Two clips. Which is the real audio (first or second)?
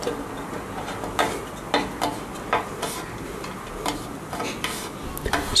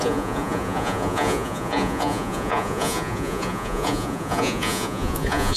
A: first